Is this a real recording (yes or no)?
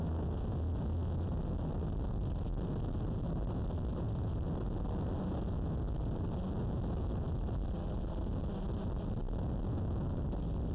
yes